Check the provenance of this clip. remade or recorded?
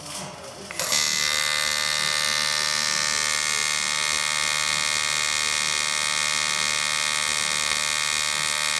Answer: recorded